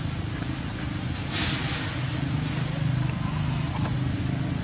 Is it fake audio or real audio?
real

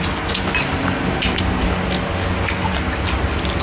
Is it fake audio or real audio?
real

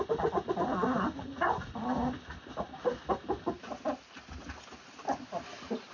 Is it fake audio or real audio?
real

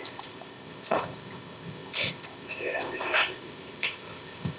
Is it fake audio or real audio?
fake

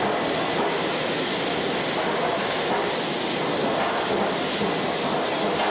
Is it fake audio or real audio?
real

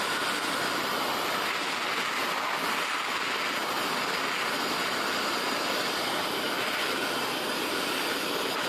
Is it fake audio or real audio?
real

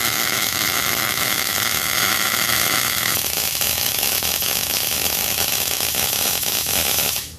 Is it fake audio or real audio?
fake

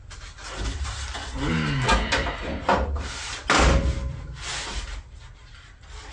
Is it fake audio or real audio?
real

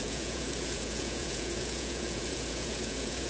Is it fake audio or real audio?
fake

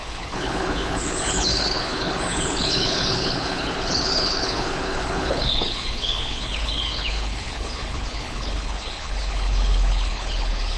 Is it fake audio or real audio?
fake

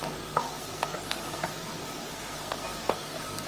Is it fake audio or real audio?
fake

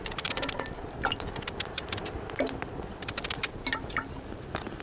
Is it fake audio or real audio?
real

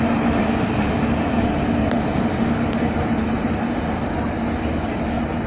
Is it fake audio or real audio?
real